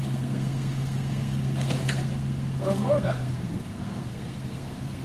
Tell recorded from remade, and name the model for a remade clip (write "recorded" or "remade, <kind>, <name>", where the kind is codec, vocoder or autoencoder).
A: remade, codec, SNAC